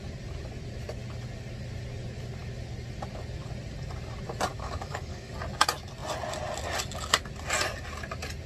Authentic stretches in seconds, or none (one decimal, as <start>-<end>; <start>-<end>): 0.0-4.5; 5.3-8.5